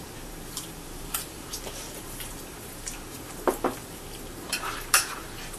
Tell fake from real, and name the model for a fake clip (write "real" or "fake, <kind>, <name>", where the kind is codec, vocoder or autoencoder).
fake, vocoder, BigVGAN v2